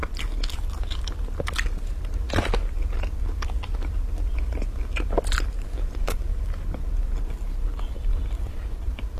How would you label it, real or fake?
real